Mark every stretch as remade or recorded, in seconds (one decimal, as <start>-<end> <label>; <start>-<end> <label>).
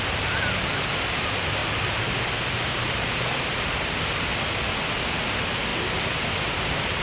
0.0-1.6 recorded; 1.6-3.7 remade; 3.7-5.7 recorded; 5.7-7.0 remade